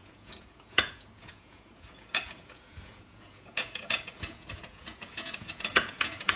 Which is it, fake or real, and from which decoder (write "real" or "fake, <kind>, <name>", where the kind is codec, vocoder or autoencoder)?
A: fake, vocoder, Vocos